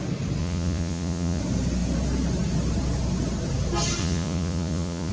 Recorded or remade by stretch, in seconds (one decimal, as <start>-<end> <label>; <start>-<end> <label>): 0.0-0.4 recorded; 0.4-1.4 remade; 1.4-4.0 recorded; 4.0-5.1 remade